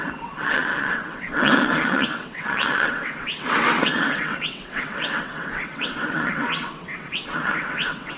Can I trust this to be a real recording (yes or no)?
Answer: no